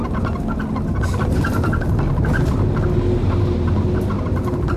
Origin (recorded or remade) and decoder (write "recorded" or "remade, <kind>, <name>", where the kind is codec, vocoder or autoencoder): recorded